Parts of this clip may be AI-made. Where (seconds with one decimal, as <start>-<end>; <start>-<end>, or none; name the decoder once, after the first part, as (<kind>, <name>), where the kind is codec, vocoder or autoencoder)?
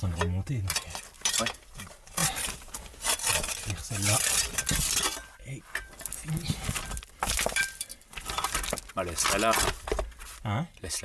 none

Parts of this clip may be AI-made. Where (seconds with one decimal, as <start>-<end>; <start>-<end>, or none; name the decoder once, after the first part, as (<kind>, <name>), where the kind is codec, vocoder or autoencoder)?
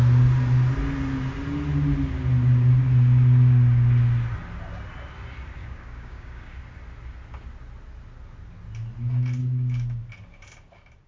5.6-6.6 (codec, DAC); 9.4-10.0